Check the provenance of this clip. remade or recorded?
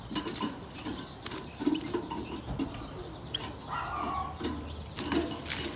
recorded